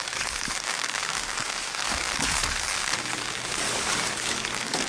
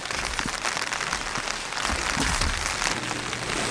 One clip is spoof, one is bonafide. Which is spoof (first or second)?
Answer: first